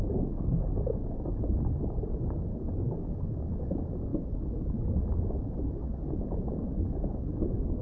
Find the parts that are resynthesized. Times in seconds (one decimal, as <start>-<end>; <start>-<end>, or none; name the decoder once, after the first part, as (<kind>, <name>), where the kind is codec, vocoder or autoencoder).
0.0-7.8 (codec, DAC)